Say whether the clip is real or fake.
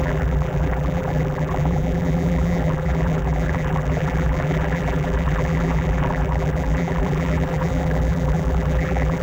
fake